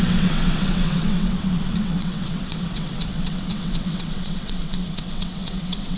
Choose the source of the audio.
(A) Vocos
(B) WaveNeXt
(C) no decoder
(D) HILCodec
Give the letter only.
B